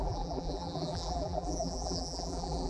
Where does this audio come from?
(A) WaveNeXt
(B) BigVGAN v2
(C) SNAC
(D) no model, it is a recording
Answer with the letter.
B